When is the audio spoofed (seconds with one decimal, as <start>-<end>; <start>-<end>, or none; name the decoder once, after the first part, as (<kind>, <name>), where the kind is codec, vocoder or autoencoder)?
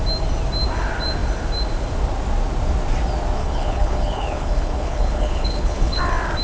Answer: 3.4-6.0 (codec, HILCodec)